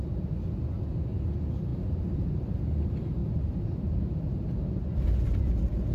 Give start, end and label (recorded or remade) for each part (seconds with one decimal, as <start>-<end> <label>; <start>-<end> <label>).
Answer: 0.0-1.7 recorded; 1.7-2.6 remade; 2.6-3.2 recorded; 3.2-4.0 remade; 4.0-5.9 recorded